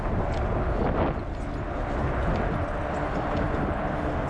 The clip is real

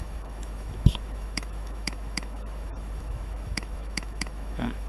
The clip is fake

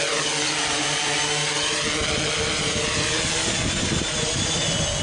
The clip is real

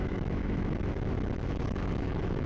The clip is fake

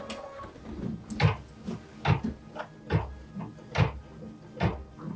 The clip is real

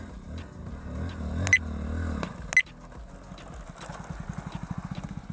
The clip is real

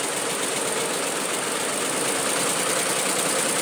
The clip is real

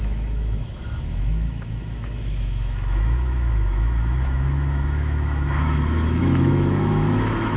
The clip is fake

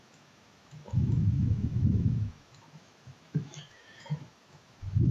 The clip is fake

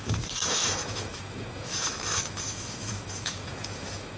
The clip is fake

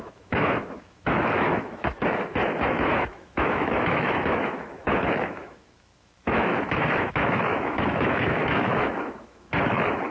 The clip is fake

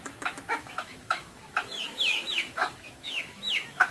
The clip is fake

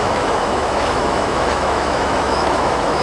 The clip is fake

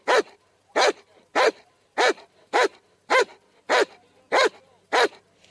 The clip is real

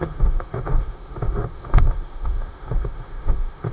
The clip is fake